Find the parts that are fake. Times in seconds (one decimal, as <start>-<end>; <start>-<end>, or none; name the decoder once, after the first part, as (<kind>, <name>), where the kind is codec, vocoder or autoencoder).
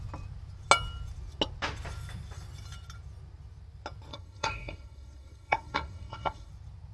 4.1-6.5 (codec, SNAC)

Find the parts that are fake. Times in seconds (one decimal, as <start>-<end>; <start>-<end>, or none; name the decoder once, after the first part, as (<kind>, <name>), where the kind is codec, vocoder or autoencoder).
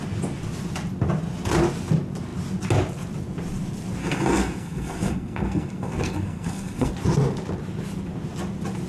4.0-6.9 (codec, SNAC)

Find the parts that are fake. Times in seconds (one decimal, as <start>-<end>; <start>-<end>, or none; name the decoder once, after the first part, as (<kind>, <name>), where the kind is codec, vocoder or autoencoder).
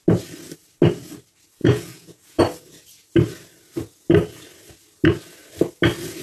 1.6-2.4 (vocoder, Vocos)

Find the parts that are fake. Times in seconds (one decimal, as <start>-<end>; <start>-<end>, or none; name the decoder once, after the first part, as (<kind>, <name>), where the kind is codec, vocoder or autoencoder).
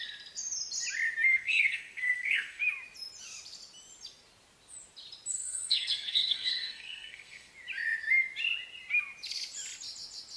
1.3-2.6 (codec, SNAC); 5.3-7.5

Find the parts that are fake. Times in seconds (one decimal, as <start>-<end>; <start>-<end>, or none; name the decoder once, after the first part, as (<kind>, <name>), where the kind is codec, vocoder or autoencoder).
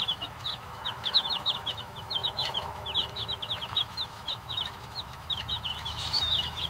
0.0-6.7 (autoencoder, DAC-VAE)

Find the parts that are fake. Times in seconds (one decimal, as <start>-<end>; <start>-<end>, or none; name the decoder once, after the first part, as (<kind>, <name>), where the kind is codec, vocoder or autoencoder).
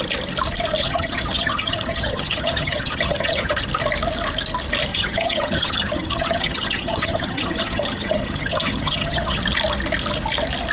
0.8-3.6 (vocoder, HiFi-GAN); 4.9-9.4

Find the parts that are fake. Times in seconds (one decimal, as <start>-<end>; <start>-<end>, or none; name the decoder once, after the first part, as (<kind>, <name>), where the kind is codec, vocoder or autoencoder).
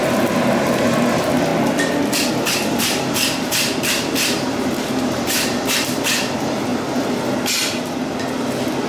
0.0-1.5 (vocoder, BigVGAN v2); 2.3-6.7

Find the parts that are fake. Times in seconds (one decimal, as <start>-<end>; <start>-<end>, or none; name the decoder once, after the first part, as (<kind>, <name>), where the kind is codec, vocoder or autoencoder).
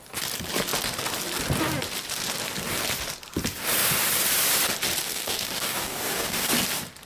5.0-6.5 (codec, DAC)